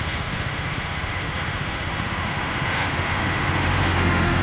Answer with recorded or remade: remade